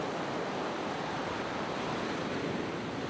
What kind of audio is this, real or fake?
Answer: fake